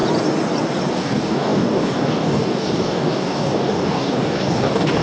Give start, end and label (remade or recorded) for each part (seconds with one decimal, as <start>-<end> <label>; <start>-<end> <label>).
0.0-0.9 recorded; 0.9-5.0 remade